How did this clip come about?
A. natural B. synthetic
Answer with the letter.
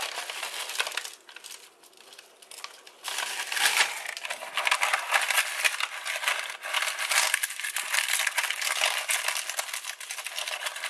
A